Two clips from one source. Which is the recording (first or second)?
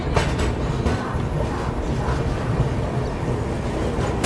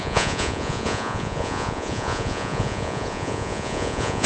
first